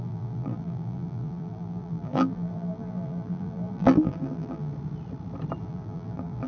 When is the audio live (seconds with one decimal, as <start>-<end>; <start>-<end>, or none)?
4.7-5.6